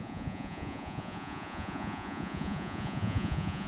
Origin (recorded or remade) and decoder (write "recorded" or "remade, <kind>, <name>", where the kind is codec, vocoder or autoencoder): remade, vocoder, Vocos